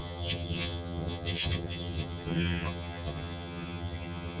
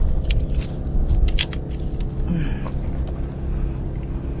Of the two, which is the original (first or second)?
second